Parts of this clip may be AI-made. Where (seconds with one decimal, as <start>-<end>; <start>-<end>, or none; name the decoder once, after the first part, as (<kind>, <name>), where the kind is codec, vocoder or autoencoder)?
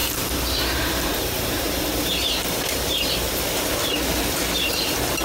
0.0-3.1 (vocoder, BigVGAN v2)